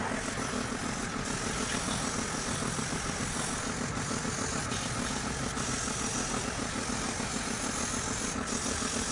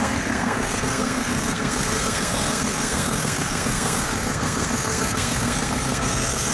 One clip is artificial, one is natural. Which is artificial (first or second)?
second